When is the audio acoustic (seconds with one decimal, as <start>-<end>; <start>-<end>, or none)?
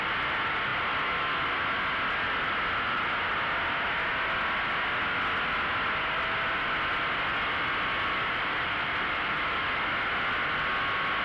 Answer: 0.0-11.2